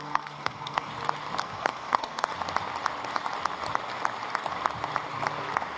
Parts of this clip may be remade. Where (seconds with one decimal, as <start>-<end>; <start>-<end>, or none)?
0.0-0.9; 1.4-2.3